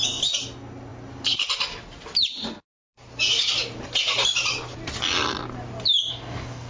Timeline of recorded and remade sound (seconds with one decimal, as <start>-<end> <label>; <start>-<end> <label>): 0.0-6.1 recorded; 6.1-6.7 remade